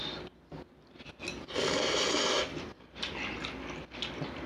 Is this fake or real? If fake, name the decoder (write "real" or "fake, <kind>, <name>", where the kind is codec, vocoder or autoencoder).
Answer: real